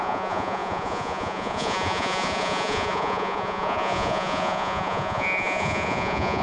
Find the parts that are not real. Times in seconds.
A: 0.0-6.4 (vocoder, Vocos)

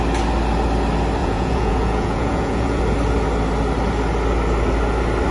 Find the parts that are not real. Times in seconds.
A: 1.2-2.8 (vocoder, Vocos)